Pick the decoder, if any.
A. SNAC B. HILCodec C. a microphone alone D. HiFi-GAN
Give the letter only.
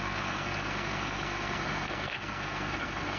A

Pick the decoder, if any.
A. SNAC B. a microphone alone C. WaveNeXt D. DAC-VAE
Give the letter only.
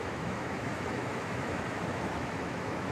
D